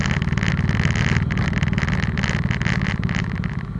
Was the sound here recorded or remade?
recorded